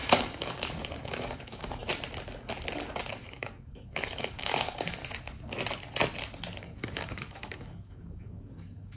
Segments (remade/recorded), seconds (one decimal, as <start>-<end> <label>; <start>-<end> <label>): 0.0-1.8 remade; 1.8-3.1 recorded; 3.1-5.0 remade; 5.0-6.6 recorded; 6.6-9.0 remade